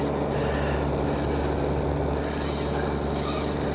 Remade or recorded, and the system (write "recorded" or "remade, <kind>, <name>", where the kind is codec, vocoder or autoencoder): recorded